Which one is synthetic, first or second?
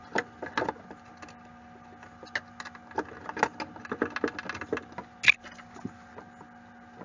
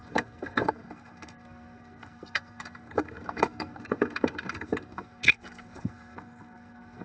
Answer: second